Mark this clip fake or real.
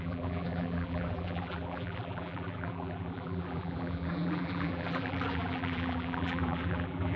fake